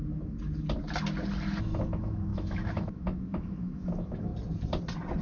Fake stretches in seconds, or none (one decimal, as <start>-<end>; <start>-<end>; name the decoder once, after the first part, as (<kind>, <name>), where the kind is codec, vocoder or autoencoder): 1.6-4.3 (autoencoder, DAC-VAE)